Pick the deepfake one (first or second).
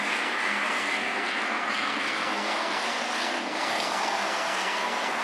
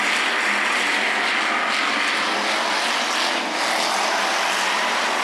first